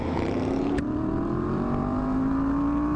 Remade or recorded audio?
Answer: recorded